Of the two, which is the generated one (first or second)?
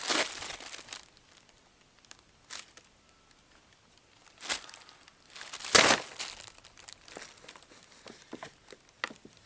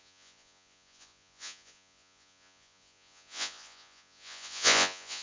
second